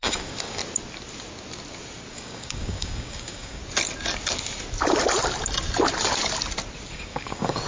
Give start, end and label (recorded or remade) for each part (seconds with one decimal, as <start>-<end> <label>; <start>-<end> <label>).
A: 0.0-0.6 remade; 0.6-2.1 recorded; 2.1-3.6 remade; 3.6-6.9 recorded; 6.9-7.7 remade